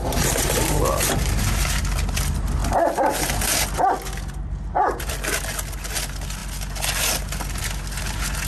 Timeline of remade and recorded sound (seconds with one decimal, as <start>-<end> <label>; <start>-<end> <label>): 0.0-1.8 remade; 1.8-8.5 recorded